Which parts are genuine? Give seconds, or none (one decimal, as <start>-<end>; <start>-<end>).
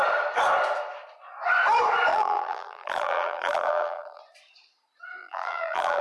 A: 0.0-2.1; 4.2-5.2